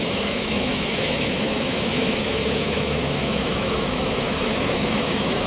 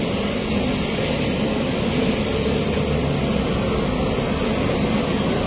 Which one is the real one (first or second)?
second